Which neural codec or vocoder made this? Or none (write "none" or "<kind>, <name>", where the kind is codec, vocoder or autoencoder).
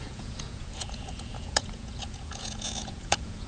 vocoder, Vocos